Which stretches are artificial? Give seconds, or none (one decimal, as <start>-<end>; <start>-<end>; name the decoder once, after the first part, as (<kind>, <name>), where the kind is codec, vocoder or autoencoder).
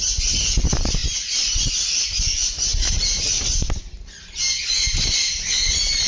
none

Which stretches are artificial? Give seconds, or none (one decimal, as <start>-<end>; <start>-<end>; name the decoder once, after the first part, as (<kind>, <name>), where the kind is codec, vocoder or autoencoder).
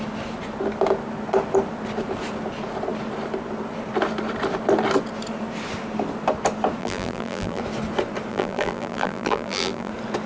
6.8-7.6 (vocoder, BigVGAN v2); 8.3-9.9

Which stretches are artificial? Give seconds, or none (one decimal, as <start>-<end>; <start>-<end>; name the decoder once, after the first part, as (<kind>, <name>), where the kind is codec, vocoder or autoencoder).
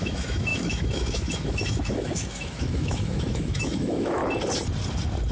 0.0-4.2 (autoencoder, DAC-VAE)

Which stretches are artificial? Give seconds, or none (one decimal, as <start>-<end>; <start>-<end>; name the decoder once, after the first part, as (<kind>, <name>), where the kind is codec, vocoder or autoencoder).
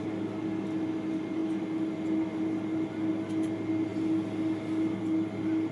none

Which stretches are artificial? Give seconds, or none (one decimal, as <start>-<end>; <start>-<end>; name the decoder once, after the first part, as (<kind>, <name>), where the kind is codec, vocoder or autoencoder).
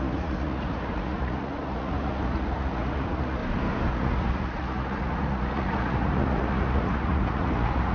0.0-3.4 (vocoder, Vocos); 3.9-7.9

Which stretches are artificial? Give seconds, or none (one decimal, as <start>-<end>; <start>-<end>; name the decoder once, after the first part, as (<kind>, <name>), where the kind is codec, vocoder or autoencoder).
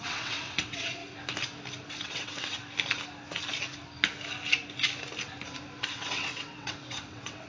0.0-1.0 (vocoder, WaveNeXt); 1.9-2.6; 5.9-7.5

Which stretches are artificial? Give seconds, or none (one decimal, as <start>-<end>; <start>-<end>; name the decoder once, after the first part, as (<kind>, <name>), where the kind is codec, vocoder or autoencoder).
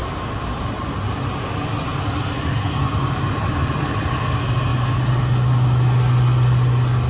none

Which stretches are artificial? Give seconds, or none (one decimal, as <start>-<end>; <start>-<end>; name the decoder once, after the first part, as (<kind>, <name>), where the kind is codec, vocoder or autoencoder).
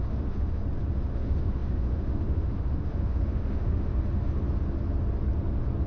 0.0-0.6 (autoencoder, DAC-VAE); 1.1-3.9